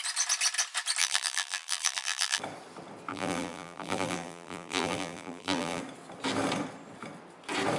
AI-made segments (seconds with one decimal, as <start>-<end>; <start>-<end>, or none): 1.0-2.4; 3.1-5.8